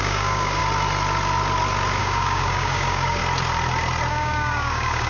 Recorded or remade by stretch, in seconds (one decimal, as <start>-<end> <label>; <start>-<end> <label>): 0.0-0.6 remade; 0.6-2.0 recorded; 2.0-3.2 remade; 3.2-4.1 recorded; 4.1-5.1 remade